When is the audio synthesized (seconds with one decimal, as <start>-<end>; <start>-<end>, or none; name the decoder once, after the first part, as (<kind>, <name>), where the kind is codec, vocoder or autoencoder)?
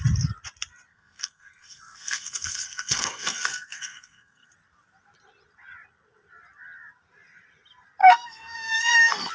0.9-4.5 (codec, SNAC); 8.0-9.3